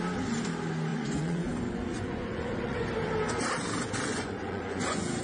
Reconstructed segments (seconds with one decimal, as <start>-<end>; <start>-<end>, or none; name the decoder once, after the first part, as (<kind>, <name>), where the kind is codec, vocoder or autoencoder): 0.9-2.9 (vocoder, Vocos); 4.1-5.2